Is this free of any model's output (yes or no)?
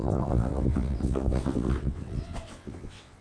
no